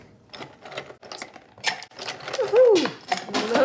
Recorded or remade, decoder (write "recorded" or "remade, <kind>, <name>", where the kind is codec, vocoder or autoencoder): recorded